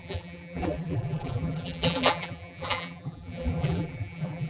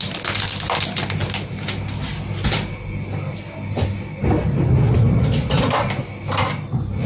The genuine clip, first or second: second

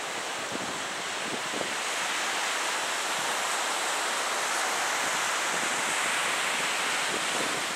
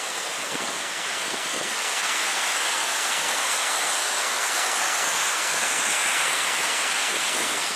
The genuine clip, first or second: first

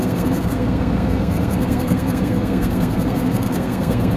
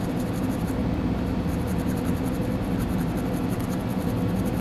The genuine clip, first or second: second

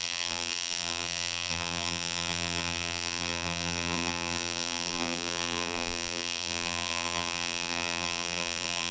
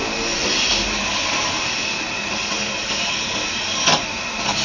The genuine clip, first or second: second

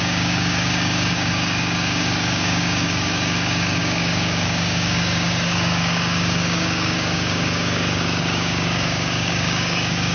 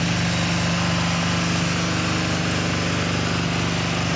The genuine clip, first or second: second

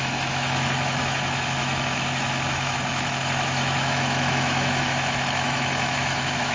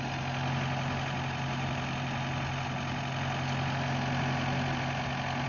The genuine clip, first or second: second